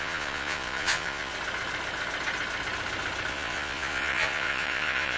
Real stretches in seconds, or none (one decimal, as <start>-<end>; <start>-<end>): 1.3-3.3